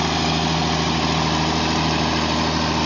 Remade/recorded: recorded